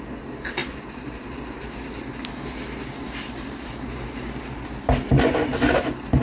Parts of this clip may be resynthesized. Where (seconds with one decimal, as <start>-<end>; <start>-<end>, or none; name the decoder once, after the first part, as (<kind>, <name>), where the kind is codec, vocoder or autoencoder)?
none